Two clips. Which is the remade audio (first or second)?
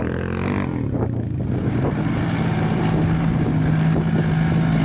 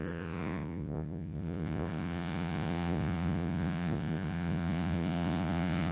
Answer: second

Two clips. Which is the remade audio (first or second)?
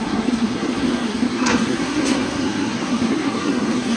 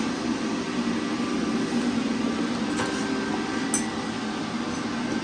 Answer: first